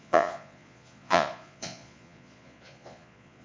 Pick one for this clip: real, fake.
fake